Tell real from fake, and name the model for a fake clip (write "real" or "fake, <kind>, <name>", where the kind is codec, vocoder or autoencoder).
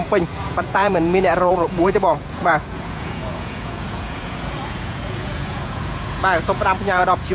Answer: fake, vocoder, Vocos